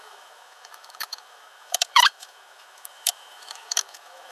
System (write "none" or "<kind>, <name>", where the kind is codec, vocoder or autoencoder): autoencoder, DAC-VAE